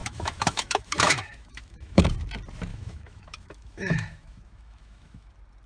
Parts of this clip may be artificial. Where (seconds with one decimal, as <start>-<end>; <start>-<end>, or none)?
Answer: 0.0-2.0; 2.7-5.3